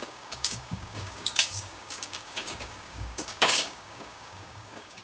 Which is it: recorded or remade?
remade